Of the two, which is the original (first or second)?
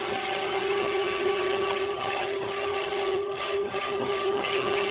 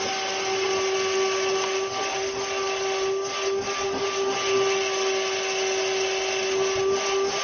second